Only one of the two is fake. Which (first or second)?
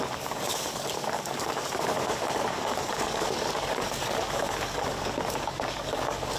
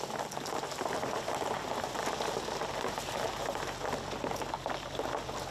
first